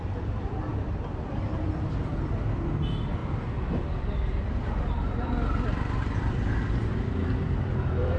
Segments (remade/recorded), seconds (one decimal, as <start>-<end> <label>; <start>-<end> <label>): 0.0-3.2 remade; 3.2-3.8 recorded; 3.8-8.2 remade